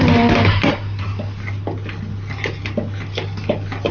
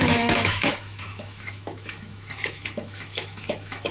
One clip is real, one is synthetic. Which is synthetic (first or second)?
second